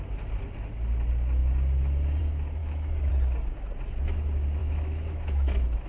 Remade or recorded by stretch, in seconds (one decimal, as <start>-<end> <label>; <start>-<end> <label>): 0.0-2.6 recorded; 2.6-3.1 remade; 3.1-4.6 recorded; 4.6-5.9 remade